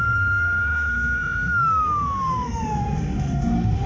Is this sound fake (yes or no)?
yes